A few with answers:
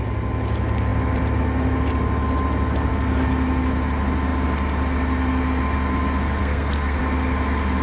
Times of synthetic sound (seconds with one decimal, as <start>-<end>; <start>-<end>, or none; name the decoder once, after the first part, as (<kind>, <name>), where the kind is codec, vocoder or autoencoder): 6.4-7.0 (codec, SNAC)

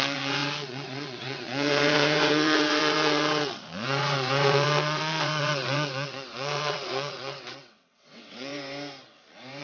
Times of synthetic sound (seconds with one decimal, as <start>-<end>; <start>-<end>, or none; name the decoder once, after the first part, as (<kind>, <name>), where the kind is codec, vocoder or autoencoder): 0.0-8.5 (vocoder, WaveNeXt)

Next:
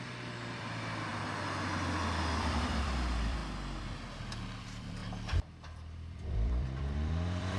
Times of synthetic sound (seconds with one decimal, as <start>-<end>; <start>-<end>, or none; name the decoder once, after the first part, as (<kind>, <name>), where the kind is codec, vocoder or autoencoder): 0.0-1.1 (vocoder, BigVGAN v2); 2.4-3.4; 4.6-7.6

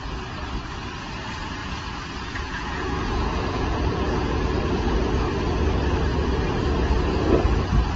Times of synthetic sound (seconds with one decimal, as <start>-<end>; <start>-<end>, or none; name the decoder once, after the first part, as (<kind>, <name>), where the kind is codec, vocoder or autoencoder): 1.6-5.2 (vocoder, Vocos)

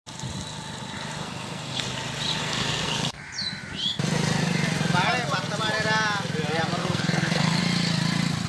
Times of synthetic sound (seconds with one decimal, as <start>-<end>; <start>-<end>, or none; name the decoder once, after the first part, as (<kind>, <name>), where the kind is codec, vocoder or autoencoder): 1.2-1.8 (codec, SNAC); 2.4-3.2; 6.8-7.6